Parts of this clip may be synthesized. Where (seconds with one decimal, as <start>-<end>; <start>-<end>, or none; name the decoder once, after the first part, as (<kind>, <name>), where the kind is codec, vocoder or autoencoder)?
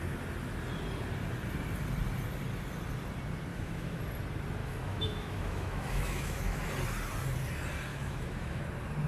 3.5-4.0 (autoencoder, DAC-VAE); 4.6-6.7; 7.9-8.6